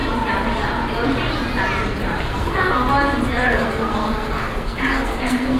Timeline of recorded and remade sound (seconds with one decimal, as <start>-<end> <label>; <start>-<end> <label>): 0.0-2.2 recorded; 2.2-2.8 remade; 2.8-3.3 recorded; 3.3-5.6 remade